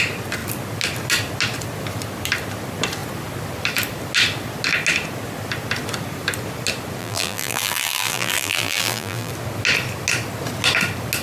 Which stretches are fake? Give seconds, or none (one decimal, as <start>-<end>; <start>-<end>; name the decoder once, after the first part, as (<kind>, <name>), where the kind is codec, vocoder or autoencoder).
7.0-9.3 (vocoder, BigVGAN v2)